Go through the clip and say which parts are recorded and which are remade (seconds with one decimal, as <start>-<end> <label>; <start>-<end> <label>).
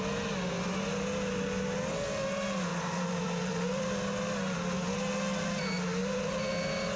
0.0-2.7 recorded; 2.7-3.8 remade; 3.8-6.0 recorded; 6.0-6.5 remade; 6.5-7.0 recorded